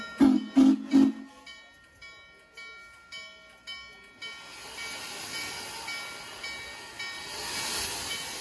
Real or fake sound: real